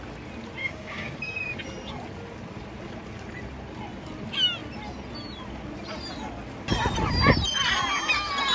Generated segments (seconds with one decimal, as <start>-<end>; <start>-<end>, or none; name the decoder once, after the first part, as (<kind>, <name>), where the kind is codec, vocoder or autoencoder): 0.6-1.3 (codec, DAC)